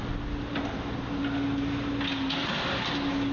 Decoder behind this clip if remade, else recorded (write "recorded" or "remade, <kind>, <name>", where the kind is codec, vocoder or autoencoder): recorded